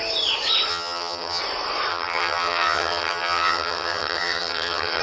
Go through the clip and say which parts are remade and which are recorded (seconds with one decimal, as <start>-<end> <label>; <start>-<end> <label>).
0.0-0.7 recorded; 0.7-1.4 remade; 1.4-1.9 recorded; 1.9-5.0 remade